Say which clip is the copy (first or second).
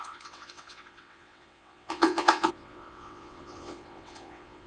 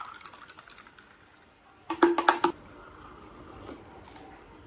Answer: first